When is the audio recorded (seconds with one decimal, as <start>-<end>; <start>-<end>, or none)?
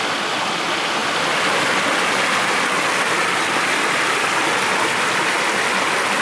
0.0-6.2